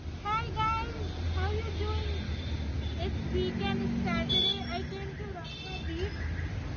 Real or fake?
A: real